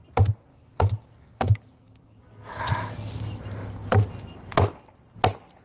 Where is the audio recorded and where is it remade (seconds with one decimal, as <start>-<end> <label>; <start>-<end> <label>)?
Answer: 0.0-0.5 recorded; 0.5-2.6 remade; 2.6-5.6 recorded